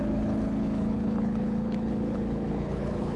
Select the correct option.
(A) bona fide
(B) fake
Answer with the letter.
B